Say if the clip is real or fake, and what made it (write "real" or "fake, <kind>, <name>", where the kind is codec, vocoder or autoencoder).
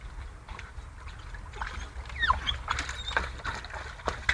real